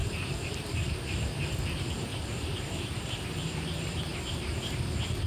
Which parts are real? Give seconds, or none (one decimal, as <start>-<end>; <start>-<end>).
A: 1.4-2.1